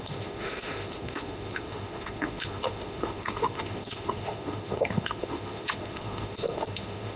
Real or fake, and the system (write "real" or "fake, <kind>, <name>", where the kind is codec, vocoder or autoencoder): fake, autoencoder, DAC-VAE